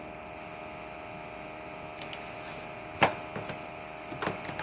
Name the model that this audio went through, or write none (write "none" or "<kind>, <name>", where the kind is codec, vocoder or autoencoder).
none